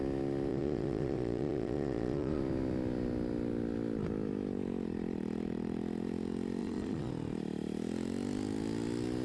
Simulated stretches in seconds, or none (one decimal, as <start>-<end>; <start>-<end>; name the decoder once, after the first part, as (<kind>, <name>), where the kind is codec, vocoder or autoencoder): 0.5-2.4 (vocoder, Vocos); 6.6-7.1